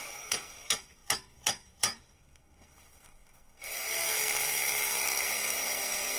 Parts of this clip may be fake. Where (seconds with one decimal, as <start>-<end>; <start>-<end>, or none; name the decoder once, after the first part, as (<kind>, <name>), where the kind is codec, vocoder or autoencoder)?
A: 0.0-6.2 (codec, SNAC)